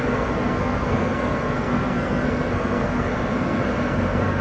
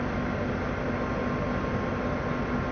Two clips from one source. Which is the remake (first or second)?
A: first